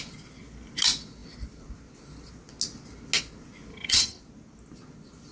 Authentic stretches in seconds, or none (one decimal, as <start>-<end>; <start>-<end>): 0.0-3.7; 4.2-5.3